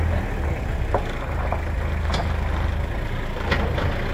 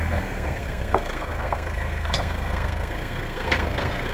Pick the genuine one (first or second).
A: first